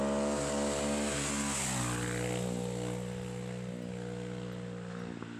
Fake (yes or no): no